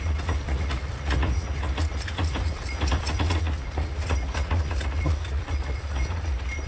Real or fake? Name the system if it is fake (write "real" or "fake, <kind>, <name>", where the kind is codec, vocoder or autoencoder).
fake, vocoder, Vocos